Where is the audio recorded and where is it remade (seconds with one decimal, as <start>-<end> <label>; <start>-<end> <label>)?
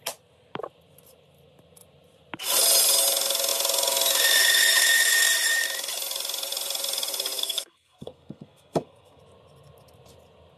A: 0.0-7.4 recorded; 7.4-9.2 remade; 9.2-10.6 recorded